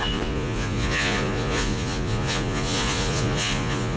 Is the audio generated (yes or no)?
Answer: yes